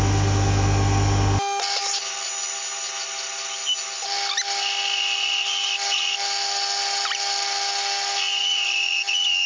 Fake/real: real